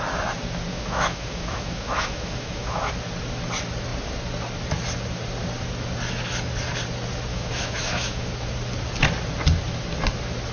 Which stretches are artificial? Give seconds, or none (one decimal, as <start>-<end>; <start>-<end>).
0.7-2.9; 7.3-8.3